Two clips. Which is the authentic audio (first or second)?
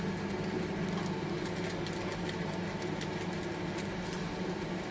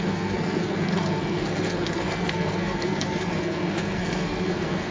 first